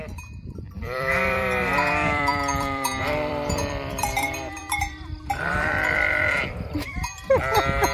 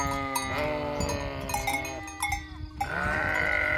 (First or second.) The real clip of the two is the second